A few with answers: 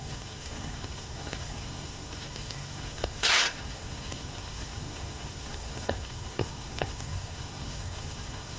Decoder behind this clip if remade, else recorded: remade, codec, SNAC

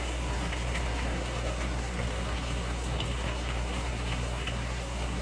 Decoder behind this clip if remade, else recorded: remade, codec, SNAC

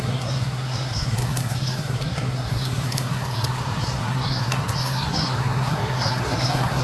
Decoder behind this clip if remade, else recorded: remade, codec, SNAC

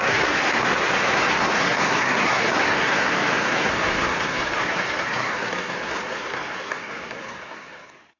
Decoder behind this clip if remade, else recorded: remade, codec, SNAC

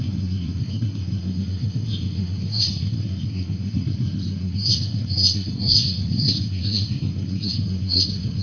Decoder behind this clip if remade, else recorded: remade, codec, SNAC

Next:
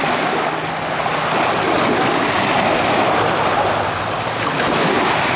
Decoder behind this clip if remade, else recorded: recorded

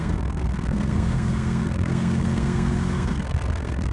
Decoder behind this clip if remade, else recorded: remade, codec, SNAC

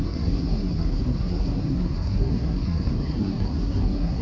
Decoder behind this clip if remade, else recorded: remade, codec, SNAC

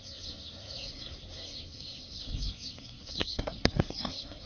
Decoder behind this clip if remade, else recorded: remade, codec, SNAC